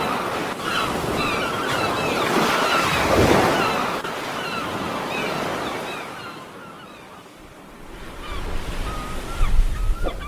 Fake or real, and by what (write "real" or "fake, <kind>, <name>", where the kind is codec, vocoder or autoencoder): real